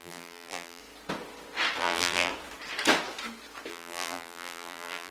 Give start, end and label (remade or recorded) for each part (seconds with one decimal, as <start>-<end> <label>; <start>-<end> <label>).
0.0-0.8 remade; 0.8-1.8 recorded; 1.8-2.3 remade; 2.3-3.7 recorded; 3.7-5.1 remade